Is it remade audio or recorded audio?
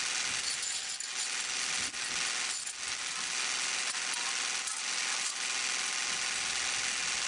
recorded